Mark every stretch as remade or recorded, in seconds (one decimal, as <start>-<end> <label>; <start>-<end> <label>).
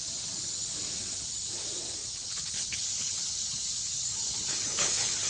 0.0-2.0 recorded; 2.0-5.3 remade